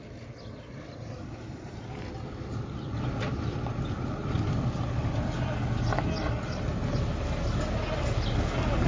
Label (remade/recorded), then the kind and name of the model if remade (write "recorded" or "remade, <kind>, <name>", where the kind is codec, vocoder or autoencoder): recorded